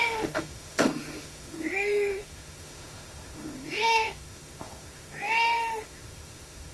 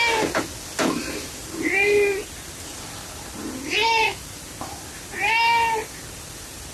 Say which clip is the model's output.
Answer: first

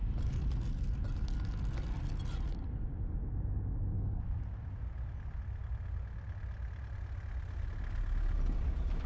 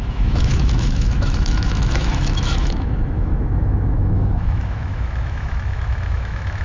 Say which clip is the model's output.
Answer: second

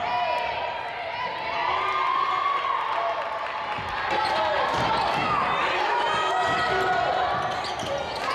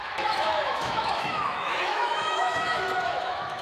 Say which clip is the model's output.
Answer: second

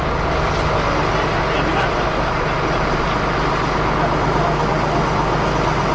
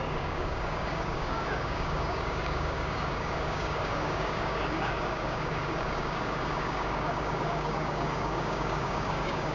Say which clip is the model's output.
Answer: second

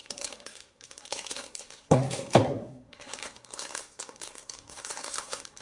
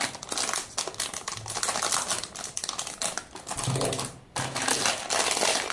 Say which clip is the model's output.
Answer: first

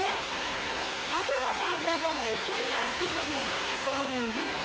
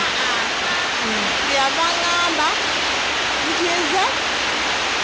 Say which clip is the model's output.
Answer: first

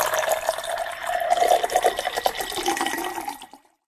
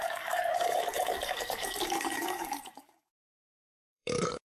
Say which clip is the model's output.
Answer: second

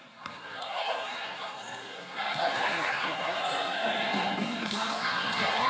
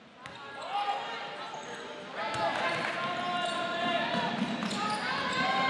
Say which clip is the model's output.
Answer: first